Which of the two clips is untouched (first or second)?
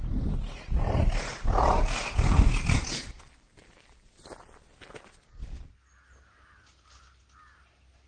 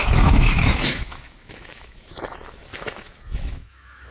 first